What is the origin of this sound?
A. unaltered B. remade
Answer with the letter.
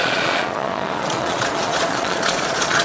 B